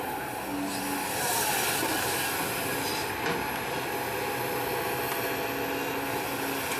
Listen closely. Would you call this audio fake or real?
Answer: real